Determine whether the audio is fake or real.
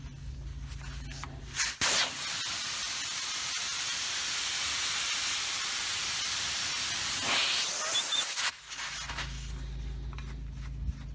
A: real